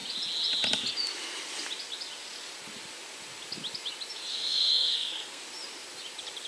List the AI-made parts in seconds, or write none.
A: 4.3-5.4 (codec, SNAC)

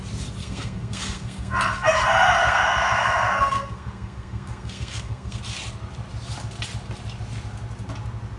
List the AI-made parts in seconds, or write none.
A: 0.4-1.9 (codec, SNAC); 2.4-5.4

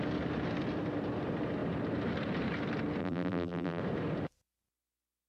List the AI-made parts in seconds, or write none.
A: 3.0-3.8 (vocoder, BigVGAN v2)

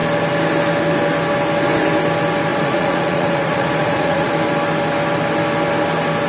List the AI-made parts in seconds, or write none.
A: 2.5-4.3 (vocoder, Vocos)